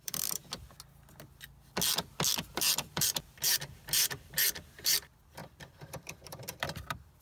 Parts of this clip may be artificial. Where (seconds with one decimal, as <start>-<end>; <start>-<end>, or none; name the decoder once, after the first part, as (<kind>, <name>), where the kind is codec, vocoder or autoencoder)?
0.0-0.4 (vocoder, BigVGAN v2); 2.5-7.2